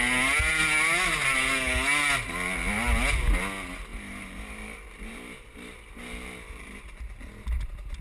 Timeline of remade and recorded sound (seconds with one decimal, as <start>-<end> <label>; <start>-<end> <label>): 0.0-3.9 recorded; 3.9-6.8 remade; 6.8-8.0 recorded